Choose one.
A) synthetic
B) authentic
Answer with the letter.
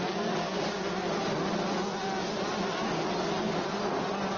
B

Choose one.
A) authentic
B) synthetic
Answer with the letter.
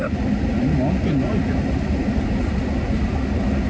A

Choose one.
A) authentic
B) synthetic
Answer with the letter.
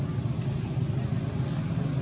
A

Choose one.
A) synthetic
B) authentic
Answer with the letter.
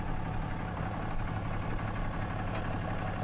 B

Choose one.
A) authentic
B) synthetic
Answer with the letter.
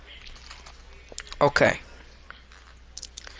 A